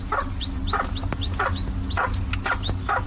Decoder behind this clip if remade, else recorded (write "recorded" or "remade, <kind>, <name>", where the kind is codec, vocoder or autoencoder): recorded